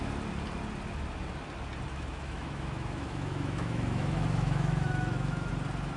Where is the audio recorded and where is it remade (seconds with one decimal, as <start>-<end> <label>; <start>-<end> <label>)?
0.0-1.9 recorded; 1.9-5.5 remade; 5.5-6.0 recorded